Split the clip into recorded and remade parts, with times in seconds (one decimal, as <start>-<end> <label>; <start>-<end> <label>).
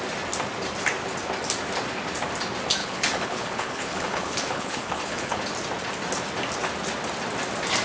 0.0-2.8 recorded; 2.8-5.4 remade; 5.4-7.8 recorded